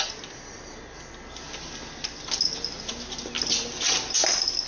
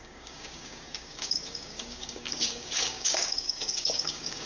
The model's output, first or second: second